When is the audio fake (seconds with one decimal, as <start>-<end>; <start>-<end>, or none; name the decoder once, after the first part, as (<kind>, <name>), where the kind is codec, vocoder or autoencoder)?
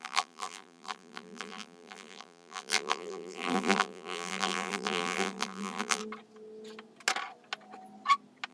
0.0-6.0 (vocoder, BigVGAN v2)